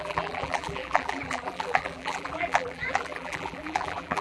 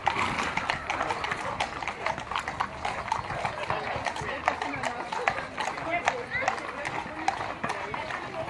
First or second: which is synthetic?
first